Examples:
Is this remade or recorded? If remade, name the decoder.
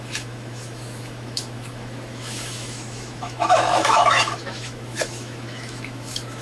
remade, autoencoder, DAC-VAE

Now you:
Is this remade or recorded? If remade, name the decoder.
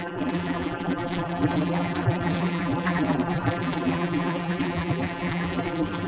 remade, vocoder, BigVGAN v2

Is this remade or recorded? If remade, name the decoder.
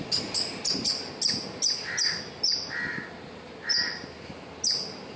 recorded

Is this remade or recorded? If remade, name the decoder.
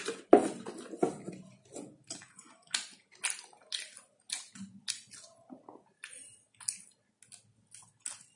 recorded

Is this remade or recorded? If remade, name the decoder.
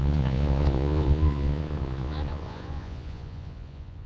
remade, vocoder, Vocos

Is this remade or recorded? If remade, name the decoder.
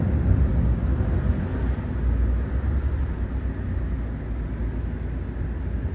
recorded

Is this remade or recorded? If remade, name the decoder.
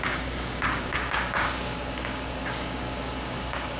remade, codec, DAC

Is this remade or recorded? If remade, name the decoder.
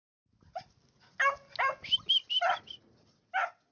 recorded